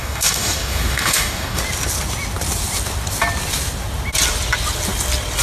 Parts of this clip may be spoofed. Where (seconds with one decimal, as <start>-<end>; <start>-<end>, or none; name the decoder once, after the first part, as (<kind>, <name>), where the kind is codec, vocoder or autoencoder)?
0.0-1.6 (codec, DAC)